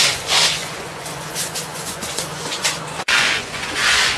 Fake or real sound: fake